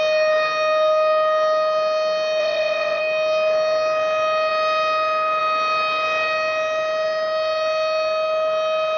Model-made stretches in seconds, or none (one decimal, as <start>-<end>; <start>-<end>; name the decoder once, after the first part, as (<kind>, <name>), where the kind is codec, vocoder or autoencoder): 2.4-3.0 (vocoder, WaveNeXt)